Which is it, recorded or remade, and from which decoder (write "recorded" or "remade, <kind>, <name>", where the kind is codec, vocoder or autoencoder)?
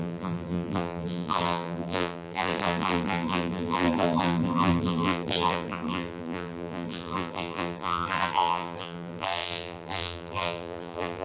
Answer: remade, vocoder, BigVGAN v2